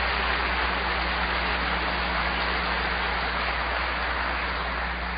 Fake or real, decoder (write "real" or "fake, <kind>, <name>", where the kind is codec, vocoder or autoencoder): real